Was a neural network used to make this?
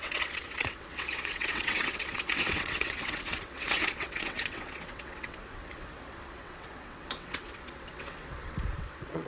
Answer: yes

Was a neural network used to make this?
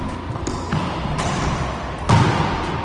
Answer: no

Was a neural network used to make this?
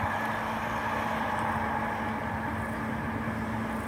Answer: no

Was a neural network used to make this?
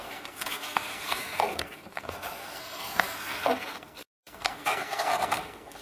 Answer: yes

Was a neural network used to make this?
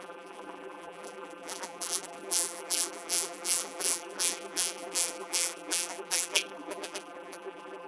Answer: yes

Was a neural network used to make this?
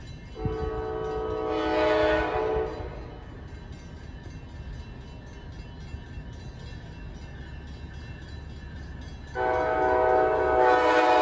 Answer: no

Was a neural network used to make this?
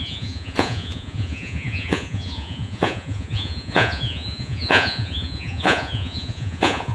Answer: yes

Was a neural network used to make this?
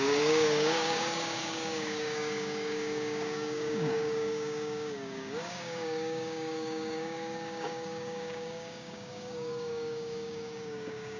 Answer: yes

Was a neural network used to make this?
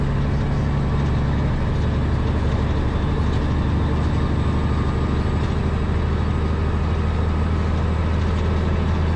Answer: no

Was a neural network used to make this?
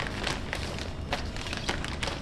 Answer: no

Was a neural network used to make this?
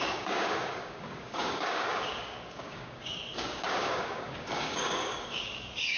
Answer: yes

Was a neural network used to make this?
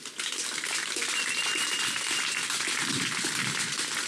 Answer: no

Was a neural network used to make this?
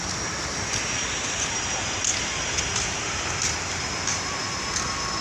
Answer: no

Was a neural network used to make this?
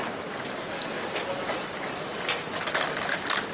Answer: no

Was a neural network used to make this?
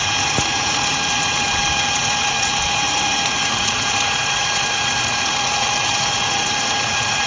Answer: yes